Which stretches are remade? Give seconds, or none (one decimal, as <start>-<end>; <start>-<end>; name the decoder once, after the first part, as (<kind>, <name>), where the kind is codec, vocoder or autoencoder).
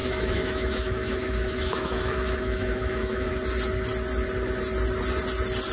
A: 0.0-3.3 (autoencoder, DAC-VAE)